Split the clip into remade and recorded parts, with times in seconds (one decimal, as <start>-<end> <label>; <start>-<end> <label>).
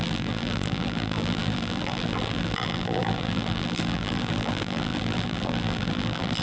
0.0-6.4 remade